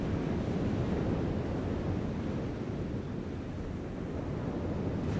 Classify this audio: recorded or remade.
recorded